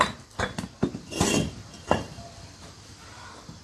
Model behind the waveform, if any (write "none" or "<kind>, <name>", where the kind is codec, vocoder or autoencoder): none